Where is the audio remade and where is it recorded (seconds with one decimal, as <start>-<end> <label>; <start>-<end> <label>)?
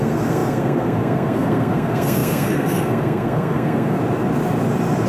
0.0-4.0 remade; 4.0-5.1 recorded